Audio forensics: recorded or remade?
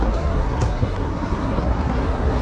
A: remade